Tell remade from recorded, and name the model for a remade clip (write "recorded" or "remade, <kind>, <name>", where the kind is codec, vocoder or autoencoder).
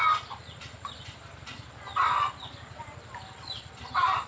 recorded